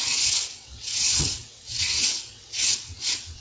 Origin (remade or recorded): remade